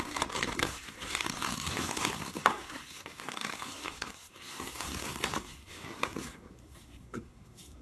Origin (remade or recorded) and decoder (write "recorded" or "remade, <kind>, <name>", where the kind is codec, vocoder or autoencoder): remade, codec, SNAC